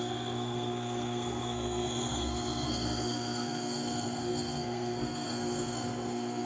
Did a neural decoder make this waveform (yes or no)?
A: yes